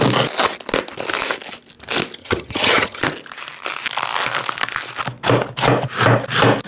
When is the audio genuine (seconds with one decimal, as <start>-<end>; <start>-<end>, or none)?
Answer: 0.0-2.2; 3.0-6.7